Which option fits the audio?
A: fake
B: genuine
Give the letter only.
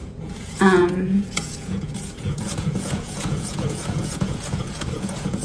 A